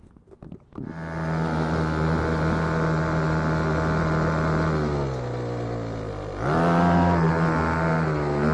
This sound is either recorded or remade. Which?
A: recorded